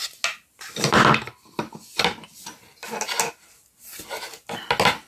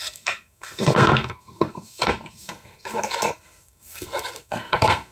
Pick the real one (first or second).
first